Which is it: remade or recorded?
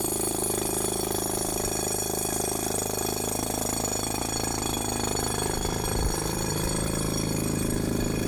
recorded